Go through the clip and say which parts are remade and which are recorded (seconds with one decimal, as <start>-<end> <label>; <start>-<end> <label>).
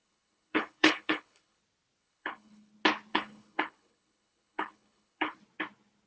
0.0-1.6 remade; 1.6-2.0 recorded; 2.0-2.7 remade; 2.7-3.1 recorded; 3.1-5.4 remade; 5.4-6.1 recorded